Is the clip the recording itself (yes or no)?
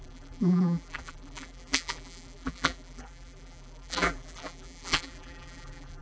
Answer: no